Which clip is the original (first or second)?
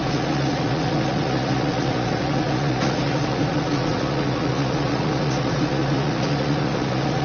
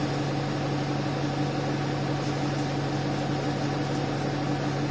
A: second